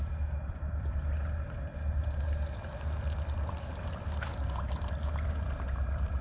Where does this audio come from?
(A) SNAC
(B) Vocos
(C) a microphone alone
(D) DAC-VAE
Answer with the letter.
C